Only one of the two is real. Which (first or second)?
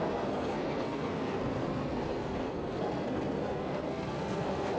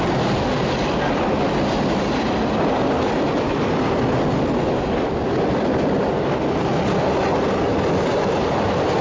second